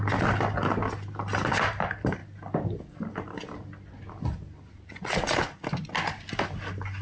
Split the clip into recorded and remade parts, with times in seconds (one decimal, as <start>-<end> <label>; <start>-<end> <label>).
0.0-7.0 recorded